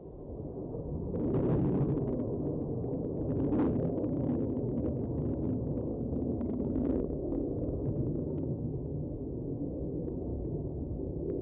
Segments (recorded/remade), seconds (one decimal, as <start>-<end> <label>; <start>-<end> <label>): 0.0-5.9 recorded; 5.9-8.7 remade; 8.7-11.4 recorded